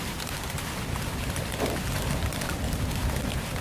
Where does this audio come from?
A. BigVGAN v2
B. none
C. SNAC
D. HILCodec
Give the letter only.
B